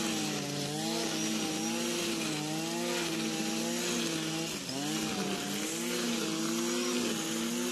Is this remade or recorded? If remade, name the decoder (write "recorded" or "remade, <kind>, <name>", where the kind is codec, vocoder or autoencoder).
recorded